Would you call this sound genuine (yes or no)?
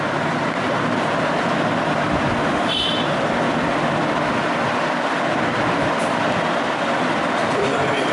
no